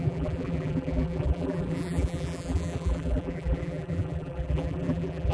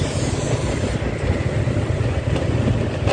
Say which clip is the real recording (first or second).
second